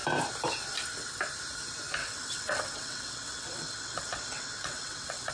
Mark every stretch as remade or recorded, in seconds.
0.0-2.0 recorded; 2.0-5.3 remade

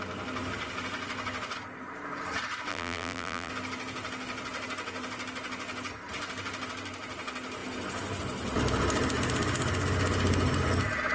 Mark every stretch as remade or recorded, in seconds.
0.0-2.7 recorded; 2.7-3.5 remade; 3.5-11.1 recorded